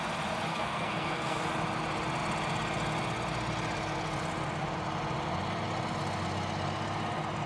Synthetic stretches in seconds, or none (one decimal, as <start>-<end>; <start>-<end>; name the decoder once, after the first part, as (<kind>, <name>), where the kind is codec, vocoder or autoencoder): 0.5-1.4 (codec, SNAC)